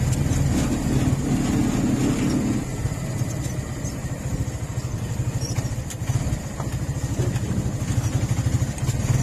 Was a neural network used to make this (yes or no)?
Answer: no